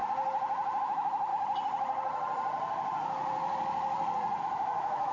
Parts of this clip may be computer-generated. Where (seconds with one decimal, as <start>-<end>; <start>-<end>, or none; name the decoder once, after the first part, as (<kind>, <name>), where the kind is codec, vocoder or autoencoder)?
0.8-1.3 (autoencoder, DAC-VAE); 4.4-5.1